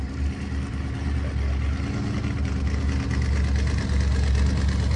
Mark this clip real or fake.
real